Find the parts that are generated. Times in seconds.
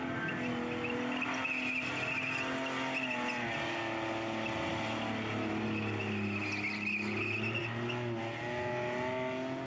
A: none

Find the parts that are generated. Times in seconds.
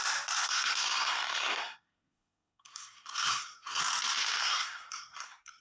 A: 0.4-3.8; 4.4-5.6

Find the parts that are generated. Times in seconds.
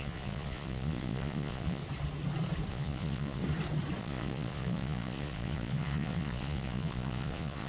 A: 0.0-1.8; 2.7-3.4; 4.0-7.7